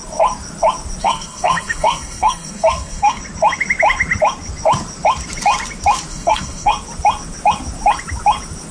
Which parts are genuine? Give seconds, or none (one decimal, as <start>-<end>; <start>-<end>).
0.0-1.0; 3.2-6.1; 6.7-8.7